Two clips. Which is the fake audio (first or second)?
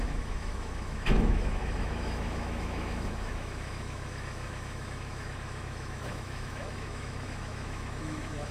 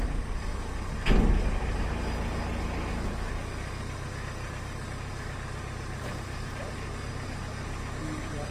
first